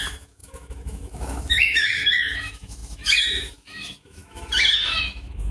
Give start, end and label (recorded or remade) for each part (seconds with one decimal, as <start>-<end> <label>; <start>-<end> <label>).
0.0-5.5 remade

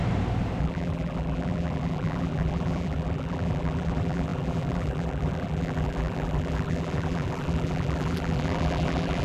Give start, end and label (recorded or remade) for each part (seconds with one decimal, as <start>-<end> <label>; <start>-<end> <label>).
0.0-0.6 recorded; 0.6-9.2 remade

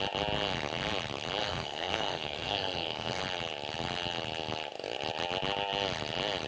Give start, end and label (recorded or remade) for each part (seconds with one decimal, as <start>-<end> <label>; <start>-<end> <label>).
0.0-1.4 recorded; 1.4-3.2 remade; 3.2-6.5 recorded